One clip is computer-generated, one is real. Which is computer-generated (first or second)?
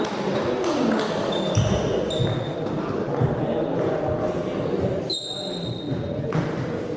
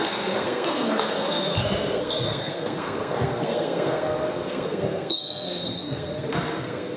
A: second